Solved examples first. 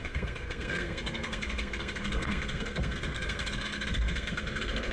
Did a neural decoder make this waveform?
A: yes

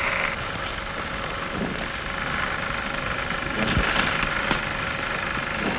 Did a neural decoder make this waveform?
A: no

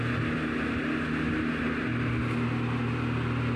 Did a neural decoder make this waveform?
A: no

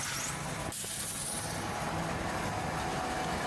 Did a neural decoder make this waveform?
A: no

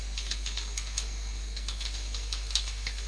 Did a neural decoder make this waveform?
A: yes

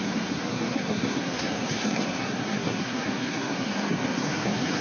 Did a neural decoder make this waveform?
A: yes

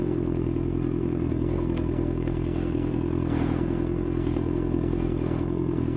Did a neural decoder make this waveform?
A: yes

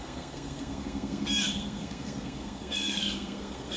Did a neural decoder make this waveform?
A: yes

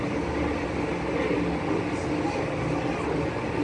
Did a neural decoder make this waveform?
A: no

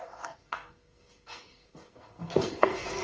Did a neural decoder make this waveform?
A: yes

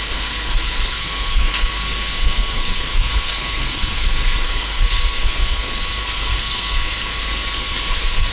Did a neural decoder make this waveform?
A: yes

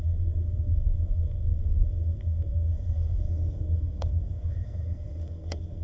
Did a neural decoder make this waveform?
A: yes